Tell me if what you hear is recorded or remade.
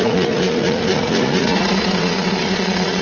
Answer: remade